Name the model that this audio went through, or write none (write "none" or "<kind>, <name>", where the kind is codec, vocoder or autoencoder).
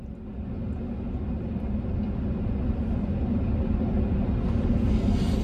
none